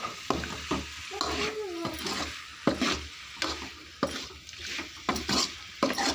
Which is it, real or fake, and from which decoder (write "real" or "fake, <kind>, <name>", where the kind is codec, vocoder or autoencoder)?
real